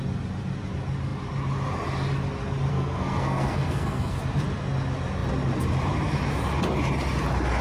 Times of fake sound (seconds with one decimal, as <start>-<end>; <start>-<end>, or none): 2.7-4.2